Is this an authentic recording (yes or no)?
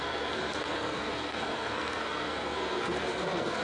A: no